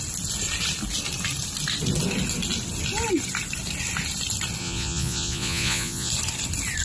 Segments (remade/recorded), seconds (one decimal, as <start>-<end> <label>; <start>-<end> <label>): 0.0-4.6 recorded; 4.6-6.1 remade; 6.1-6.8 recorded

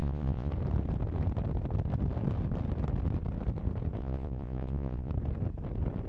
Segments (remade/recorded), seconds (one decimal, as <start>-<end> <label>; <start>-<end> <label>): 0.0-0.5 remade; 0.5-4.0 recorded; 4.0-5.1 remade; 5.1-6.1 recorded

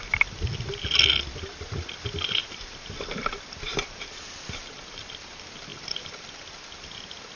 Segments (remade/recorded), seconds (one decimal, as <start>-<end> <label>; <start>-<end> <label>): 0.0-7.4 recorded

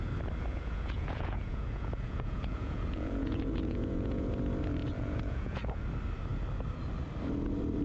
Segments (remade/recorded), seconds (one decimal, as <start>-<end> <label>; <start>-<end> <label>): 0.0-0.5 recorded; 0.5-4.3 remade; 4.3-4.8 recorded; 4.8-5.8 remade; 5.8-7.8 recorded